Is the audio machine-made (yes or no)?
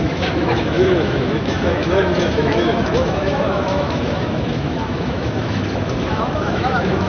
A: yes